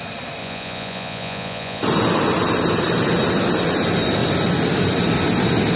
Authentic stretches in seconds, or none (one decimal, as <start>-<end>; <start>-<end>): 0.0-0.4; 1.8-5.8